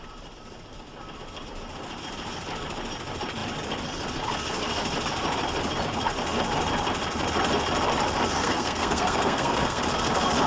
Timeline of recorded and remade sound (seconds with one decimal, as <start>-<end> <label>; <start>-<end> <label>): 0.0-8.4 recorded; 8.4-9.8 remade; 9.8-10.5 recorded